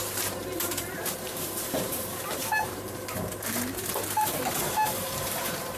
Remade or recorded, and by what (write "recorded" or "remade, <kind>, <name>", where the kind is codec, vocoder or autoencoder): remade, vocoder, BigVGAN v2